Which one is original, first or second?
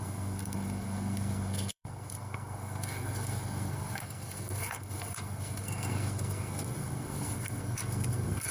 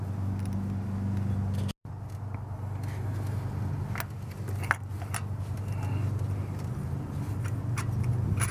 second